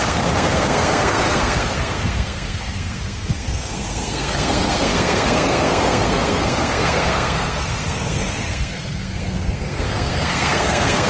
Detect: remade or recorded remade